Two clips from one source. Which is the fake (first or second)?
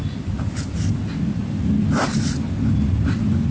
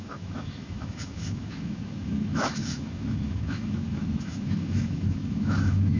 second